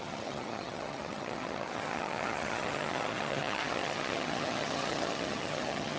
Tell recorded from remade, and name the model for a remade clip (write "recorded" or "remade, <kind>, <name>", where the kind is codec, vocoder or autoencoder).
remade, vocoder, HiFi-GAN